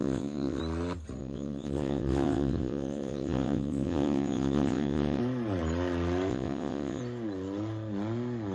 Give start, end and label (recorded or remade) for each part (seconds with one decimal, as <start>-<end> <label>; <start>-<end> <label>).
0.0-0.6 remade; 0.6-1.2 recorded; 1.2-5.2 remade; 5.2-6.3 recorded; 6.3-7.0 remade; 7.0-8.5 recorded